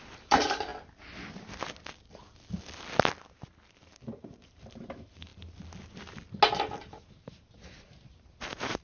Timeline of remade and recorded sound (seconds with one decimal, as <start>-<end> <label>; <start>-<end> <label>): 0.0-0.7 remade; 0.7-4.2 recorded; 4.2-5.3 remade; 5.3-6.6 recorded; 6.6-8.8 remade